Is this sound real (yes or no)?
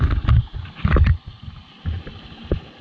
yes